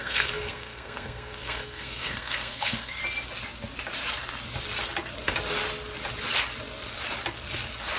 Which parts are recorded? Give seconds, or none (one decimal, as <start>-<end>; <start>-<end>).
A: 3.0-8.0